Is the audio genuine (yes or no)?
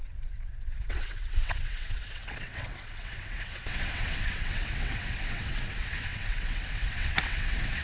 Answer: no